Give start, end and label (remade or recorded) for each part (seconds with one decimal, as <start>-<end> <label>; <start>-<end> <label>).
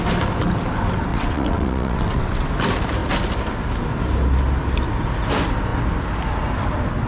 0.0-1.1 recorded; 1.1-2.5 remade; 2.5-7.1 recorded